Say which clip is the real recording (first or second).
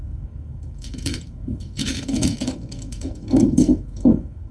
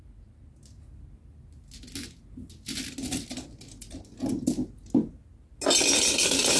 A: second